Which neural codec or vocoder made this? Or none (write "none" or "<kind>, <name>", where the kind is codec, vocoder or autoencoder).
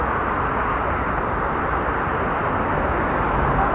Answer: none